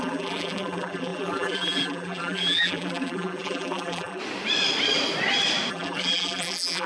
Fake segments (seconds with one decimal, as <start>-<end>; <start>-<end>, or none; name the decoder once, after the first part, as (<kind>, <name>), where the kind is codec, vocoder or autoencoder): 0.0-4.2 (vocoder, BigVGAN v2); 5.7-6.9